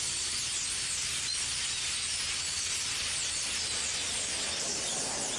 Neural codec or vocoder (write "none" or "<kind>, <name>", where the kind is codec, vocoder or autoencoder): none